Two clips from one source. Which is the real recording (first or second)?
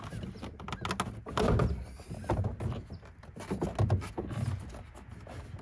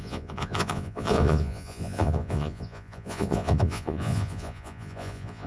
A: first